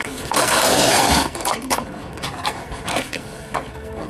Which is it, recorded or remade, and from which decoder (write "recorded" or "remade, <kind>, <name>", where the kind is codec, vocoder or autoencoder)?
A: remade, codec, SNAC